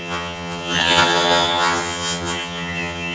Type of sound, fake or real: fake